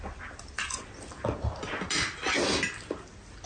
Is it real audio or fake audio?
real